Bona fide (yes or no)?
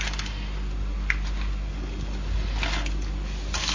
yes